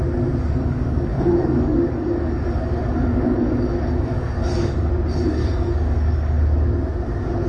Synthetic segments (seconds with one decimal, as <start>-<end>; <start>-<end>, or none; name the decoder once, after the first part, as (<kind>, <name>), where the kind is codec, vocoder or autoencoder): 0.4-4.9 (codec, DAC); 5.4-6.4